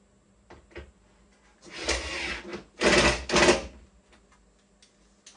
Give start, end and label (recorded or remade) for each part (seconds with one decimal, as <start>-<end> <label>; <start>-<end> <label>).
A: 0.0-5.4 recorded